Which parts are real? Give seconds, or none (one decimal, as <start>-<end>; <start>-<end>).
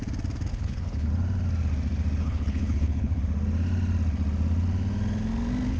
0.0-0.5; 1.1-2.2; 3.2-5.8